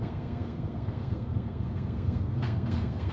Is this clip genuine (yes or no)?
no